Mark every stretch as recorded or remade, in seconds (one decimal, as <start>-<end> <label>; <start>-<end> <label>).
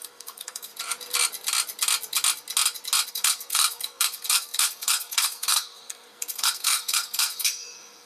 0.0-0.7 remade; 0.7-3.1 recorded; 3.1-8.1 remade